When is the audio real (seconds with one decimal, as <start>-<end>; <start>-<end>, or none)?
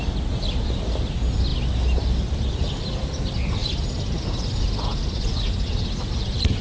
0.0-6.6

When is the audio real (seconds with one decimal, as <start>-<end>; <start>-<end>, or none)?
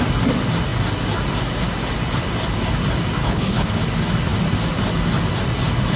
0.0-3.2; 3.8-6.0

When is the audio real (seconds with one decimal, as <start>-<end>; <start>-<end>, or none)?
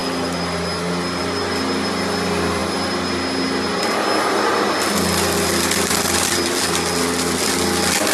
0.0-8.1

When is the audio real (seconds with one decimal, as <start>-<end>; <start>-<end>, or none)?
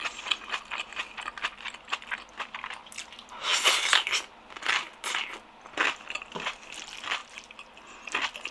0.0-8.5